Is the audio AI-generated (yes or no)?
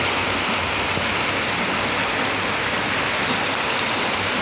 no